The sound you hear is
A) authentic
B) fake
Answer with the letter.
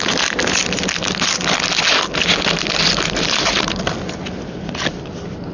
A